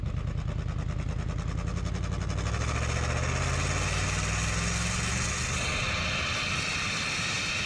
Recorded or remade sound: recorded